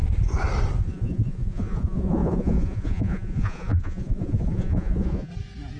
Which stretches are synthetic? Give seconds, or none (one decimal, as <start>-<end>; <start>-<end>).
0.8-5.3